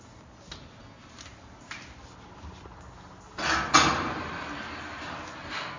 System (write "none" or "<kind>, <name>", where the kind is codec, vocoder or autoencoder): none